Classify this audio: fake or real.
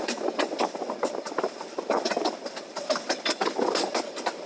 real